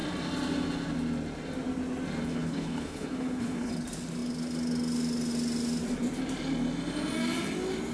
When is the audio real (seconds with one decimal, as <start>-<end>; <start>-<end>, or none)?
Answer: 0.0-2.3; 3.7-7.9